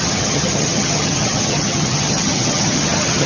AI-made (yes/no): yes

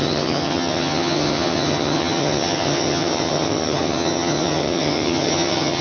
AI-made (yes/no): yes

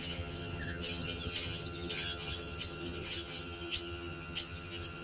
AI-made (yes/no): yes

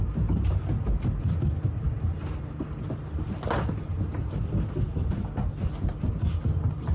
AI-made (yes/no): no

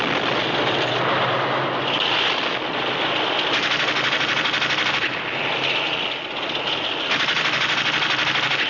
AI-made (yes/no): no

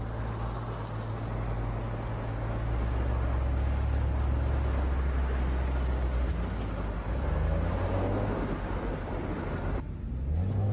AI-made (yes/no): no